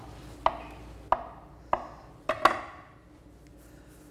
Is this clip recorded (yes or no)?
yes